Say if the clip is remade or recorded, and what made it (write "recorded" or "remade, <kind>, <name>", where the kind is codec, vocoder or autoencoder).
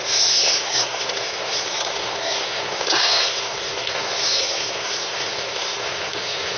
remade, codec, SNAC